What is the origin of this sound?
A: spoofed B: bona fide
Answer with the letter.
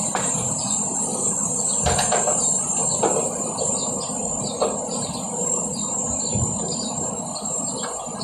B